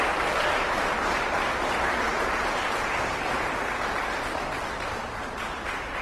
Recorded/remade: remade